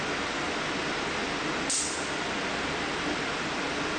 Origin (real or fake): real